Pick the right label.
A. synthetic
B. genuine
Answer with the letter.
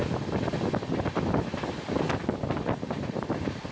B